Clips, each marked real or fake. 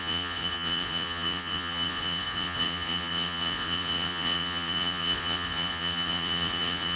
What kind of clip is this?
fake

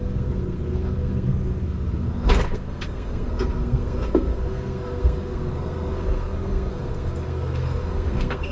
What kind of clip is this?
fake